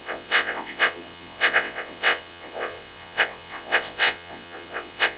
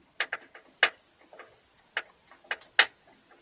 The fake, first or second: first